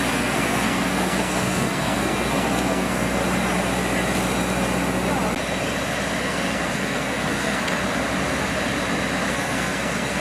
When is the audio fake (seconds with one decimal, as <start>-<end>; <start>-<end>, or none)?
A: 0.0-3.2; 6.2-7.8; 9.3-10.2